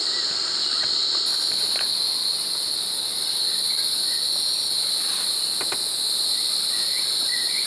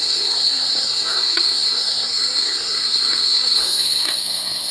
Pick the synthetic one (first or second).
second